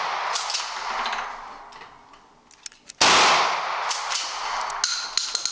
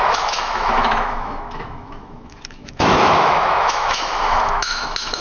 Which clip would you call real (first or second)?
first